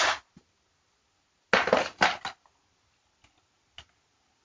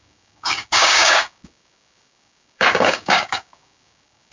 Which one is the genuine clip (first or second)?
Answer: first